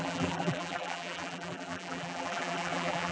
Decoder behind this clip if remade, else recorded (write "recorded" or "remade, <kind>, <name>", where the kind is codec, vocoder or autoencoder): remade, vocoder, BigVGAN v2